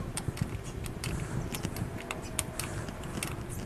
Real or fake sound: real